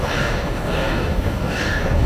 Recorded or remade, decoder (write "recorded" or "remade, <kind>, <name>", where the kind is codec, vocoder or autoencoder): remade, codec, DAC